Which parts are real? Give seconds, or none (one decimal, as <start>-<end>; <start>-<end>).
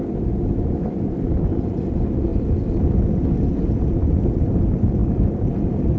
0.0-6.0